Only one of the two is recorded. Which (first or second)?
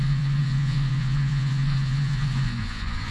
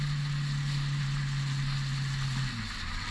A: second